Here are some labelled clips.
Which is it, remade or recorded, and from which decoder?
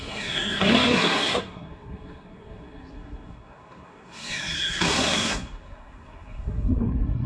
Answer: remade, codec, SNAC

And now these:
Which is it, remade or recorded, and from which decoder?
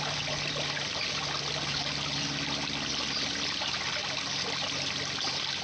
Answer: recorded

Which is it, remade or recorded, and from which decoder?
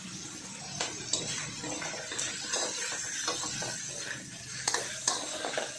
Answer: recorded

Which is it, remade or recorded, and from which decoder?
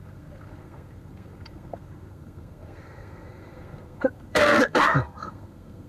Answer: remade, codec, SNAC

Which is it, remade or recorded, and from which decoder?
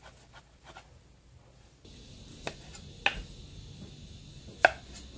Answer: recorded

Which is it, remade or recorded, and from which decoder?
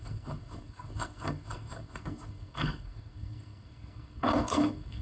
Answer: remade, codec, SNAC